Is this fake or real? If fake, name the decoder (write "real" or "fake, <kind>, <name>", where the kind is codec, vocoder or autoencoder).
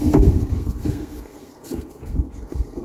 fake, codec, SNAC